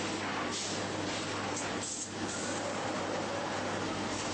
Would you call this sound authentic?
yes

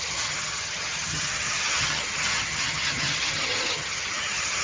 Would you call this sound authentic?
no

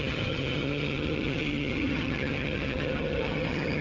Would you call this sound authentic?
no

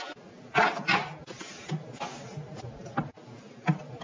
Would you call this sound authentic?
yes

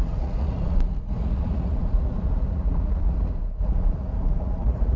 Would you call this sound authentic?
no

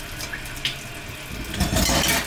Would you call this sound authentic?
yes